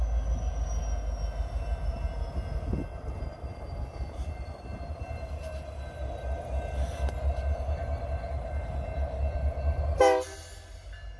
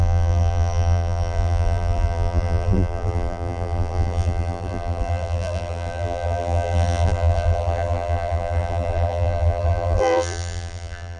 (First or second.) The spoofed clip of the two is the second